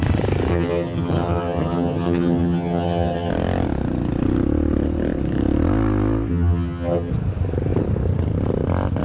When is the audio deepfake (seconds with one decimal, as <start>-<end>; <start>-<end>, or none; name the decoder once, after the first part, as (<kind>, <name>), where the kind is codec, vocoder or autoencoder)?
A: 0.5-3.3 (vocoder, HiFi-GAN); 6.3-7.1